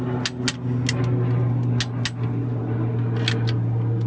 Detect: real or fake real